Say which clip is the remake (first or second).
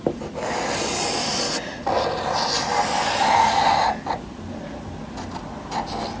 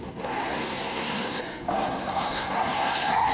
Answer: second